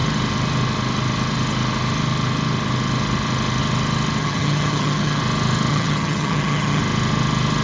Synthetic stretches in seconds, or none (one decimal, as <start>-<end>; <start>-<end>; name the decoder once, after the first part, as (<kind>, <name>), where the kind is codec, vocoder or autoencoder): 4.2-5.2 (vocoder, HiFi-GAN); 5.7-6.8